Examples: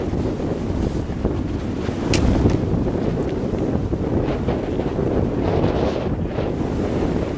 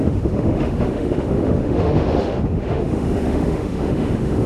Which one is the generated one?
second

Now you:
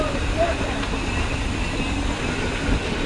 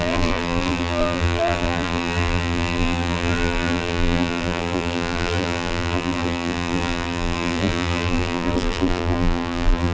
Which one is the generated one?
second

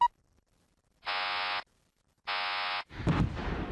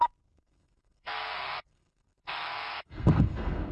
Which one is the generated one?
second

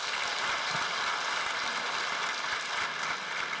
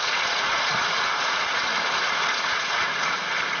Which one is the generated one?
second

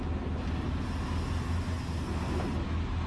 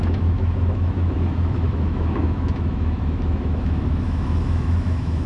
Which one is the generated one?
second